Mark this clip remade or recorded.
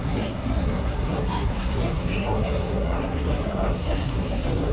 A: remade